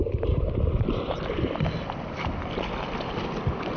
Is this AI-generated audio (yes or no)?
no